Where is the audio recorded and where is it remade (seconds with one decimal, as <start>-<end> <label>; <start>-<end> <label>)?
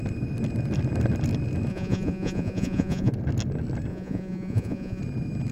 0.0-1.7 recorded; 1.7-3.1 remade; 3.1-3.9 recorded; 3.9-5.0 remade; 5.0-5.5 recorded